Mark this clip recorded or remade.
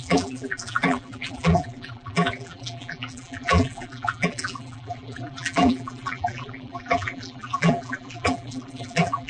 remade